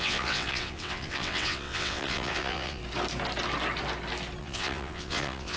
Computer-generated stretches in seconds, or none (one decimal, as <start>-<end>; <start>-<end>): 0.0-2.8; 4.4-5.6